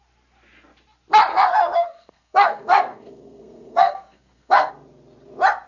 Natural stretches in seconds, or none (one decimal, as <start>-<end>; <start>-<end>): 0.0-1.3; 4.7-5.7

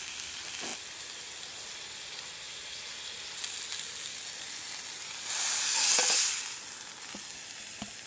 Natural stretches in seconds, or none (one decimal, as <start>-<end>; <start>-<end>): 0.0-8.1